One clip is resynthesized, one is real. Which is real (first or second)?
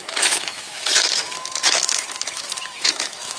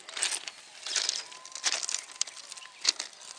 second